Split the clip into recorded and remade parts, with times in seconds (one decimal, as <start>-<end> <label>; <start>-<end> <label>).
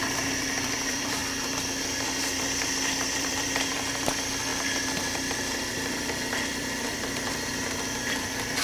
0.0-1.2 remade; 1.2-2.4 recorded; 2.4-8.6 remade